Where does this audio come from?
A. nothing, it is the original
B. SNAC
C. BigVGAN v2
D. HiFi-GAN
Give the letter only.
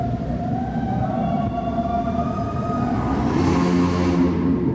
A